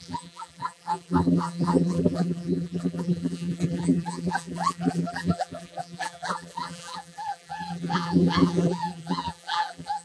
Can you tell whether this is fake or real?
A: fake